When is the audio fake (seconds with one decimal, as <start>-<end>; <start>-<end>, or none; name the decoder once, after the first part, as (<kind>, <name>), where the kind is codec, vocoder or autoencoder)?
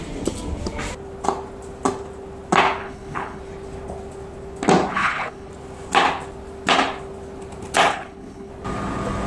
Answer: 2.8-3.4 (codec, HILCodec); 4.9-5.5; 7.9-8.5